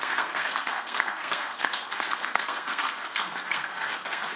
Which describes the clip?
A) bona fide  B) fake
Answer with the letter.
B